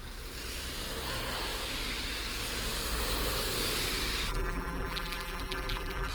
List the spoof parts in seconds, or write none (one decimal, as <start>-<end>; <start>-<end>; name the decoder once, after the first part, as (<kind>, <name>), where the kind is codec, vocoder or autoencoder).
4.3-6.1 (vocoder, BigVGAN v2)

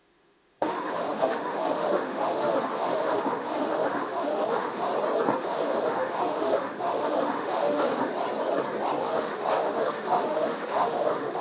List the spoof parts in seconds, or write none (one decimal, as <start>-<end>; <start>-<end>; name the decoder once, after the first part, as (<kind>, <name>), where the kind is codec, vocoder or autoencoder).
0.0-4.9 (autoencoder, DAC-VAE); 5.4-8.1; 9.0-11.4

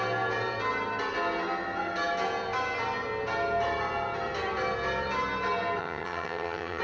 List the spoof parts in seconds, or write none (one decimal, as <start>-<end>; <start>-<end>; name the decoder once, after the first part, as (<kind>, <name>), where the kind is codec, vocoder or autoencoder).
5.8-6.8 (vocoder, HiFi-GAN)

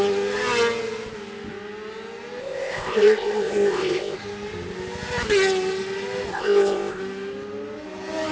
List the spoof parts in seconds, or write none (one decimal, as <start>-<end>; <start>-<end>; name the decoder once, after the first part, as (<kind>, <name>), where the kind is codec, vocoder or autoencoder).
2.4-4.2 (codec, ZipCodec); 6.3-7.0